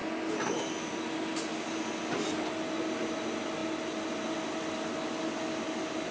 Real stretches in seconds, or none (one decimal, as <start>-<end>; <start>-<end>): 0.0-6.1